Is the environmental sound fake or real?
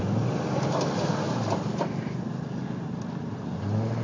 real